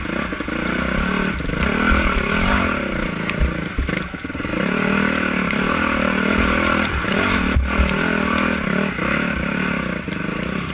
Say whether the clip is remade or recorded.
recorded